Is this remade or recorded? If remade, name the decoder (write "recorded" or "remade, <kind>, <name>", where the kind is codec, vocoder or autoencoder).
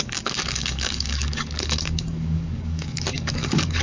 remade, codec, DAC